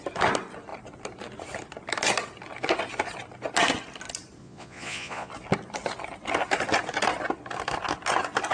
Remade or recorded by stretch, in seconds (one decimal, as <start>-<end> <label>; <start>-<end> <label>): 0.0-4.4 recorded; 4.4-5.3 remade; 5.3-8.5 recorded